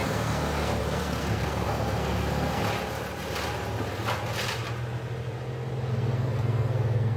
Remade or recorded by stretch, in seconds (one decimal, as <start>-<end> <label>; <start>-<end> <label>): 0.0-2.6 remade; 2.6-5.9 recorded; 5.9-7.2 remade